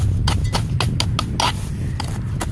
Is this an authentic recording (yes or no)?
yes